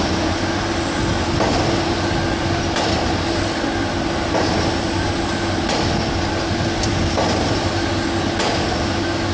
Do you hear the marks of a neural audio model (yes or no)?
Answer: no